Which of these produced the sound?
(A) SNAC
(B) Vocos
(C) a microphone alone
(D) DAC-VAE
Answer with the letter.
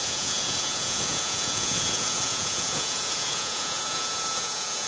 B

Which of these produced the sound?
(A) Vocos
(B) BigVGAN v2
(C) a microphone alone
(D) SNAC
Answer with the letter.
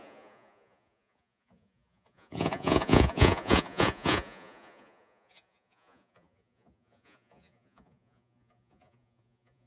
A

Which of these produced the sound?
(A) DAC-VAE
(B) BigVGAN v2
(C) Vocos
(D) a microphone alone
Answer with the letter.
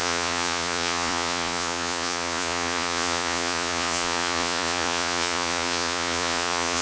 C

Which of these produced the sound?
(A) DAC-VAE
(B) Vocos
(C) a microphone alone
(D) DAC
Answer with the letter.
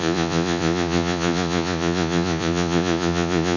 B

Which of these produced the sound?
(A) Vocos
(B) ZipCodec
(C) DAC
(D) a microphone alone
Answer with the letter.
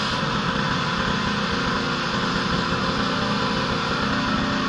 D